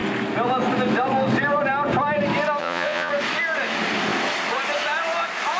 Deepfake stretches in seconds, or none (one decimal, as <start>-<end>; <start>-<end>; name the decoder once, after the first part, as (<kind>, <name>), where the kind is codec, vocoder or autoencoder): 2.6-3.1 (vocoder, Vocos)